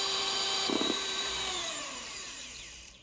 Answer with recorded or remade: remade